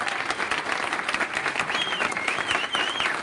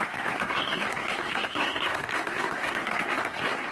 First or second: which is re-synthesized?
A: second